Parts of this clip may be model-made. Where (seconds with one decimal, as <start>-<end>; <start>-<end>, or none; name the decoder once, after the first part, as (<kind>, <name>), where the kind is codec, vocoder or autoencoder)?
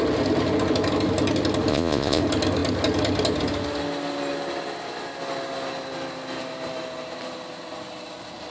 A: 1.7-2.2 (vocoder, Vocos)